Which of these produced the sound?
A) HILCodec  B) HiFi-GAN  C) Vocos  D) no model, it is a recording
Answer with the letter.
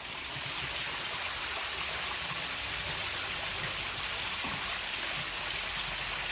D